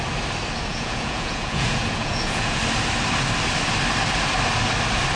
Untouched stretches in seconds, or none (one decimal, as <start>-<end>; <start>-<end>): 0.0-0.7; 2.6-5.2